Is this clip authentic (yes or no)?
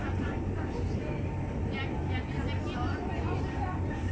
yes